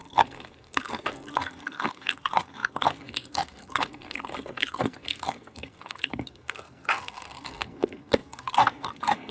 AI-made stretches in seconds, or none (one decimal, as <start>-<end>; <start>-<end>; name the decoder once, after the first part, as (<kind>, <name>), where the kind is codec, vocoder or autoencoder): 0.0-9.3 (codec, SNAC)